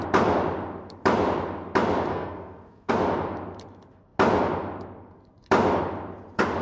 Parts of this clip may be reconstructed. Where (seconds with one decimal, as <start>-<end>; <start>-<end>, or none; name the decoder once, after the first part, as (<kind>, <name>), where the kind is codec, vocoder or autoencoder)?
2.1-2.9 (codec, SNAC)